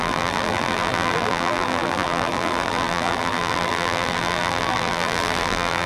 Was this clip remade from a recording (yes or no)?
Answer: yes